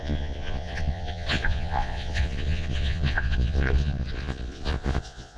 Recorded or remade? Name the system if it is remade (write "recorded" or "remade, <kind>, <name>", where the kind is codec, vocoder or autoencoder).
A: remade, vocoder, Vocos